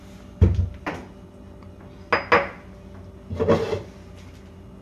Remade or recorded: recorded